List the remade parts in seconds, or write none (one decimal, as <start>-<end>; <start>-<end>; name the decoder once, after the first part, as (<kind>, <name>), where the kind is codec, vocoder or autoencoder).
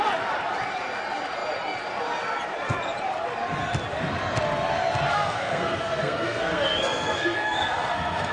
5.1-8.3 (codec, SNAC)